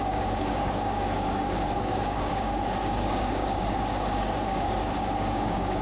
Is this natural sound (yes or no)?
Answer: no